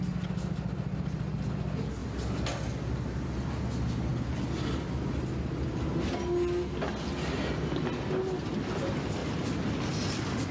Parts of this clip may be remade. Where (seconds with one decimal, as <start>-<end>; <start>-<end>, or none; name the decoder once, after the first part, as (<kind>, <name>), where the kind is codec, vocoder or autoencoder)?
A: none